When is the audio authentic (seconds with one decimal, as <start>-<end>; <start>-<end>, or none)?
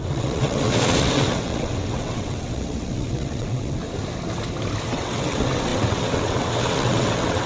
3.8-4.9